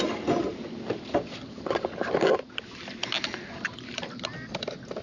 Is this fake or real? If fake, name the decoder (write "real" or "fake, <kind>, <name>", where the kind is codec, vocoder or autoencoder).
real